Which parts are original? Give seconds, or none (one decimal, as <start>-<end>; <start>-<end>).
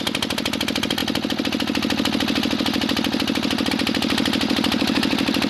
0.0-5.5